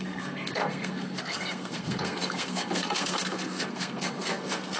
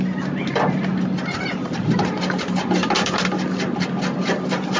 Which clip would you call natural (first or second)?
second